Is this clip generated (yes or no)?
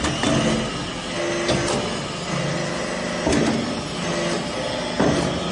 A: no